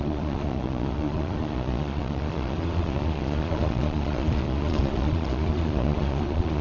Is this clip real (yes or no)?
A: no